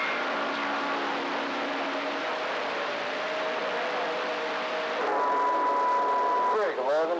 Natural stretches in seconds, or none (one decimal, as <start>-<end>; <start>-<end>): 0.0-7.2